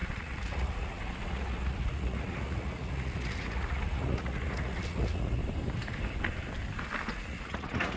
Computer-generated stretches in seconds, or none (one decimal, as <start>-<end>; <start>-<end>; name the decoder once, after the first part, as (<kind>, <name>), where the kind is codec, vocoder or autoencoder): 0.0-5.4 (vocoder, Vocos); 7.1-8.0